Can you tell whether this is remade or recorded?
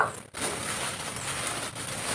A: recorded